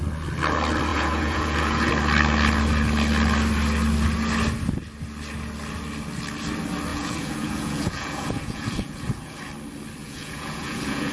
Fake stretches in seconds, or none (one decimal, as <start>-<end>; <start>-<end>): 0.9-1.9; 6.9-9.5; 10.0-11.1